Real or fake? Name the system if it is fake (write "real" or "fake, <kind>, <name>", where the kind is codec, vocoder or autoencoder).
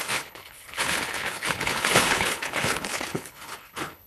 fake, codec, HILCodec